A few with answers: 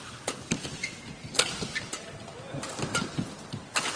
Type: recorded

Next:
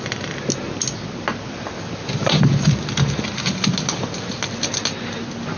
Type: recorded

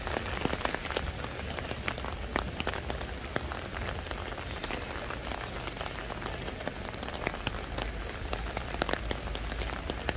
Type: recorded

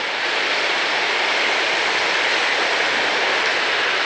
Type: recorded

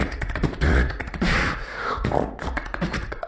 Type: remade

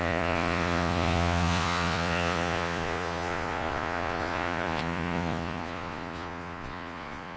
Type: remade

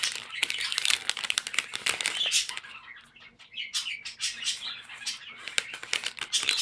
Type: recorded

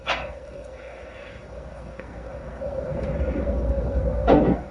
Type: remade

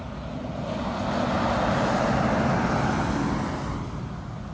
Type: recorded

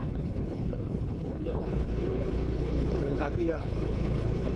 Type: remade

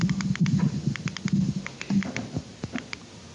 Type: recorded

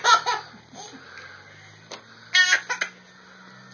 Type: recorded